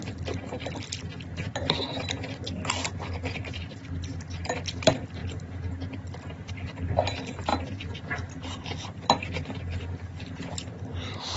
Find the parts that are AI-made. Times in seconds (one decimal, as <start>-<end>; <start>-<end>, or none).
none